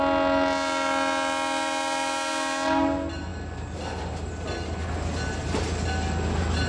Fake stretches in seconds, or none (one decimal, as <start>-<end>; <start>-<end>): none